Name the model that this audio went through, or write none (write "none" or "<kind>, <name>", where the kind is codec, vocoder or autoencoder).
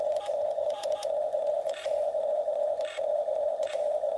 vocoder, Vocos